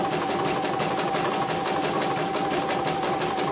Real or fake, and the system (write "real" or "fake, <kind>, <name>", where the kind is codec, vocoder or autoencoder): real